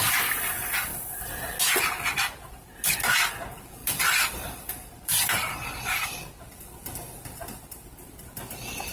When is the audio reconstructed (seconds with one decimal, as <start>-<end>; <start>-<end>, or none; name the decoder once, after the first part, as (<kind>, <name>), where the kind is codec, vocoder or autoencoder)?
3.8-6.2 (vocoder, BigVGAN v2)